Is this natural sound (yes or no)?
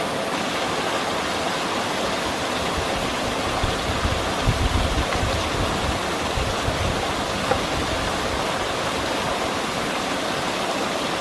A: yes